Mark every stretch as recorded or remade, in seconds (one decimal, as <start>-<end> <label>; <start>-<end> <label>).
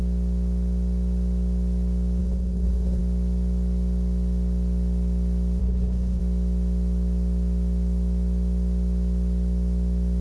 0.0-2.2 recorded; 2.2-3.0 remade; 3.0-5.6 recorded; 5.6-6.2 remade; 6.2-10.2 recorded